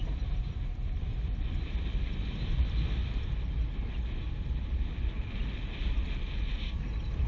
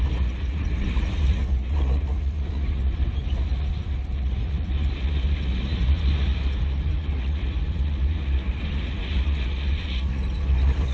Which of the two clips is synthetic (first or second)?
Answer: second